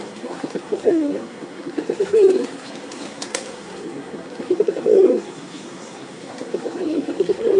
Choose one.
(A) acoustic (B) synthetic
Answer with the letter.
B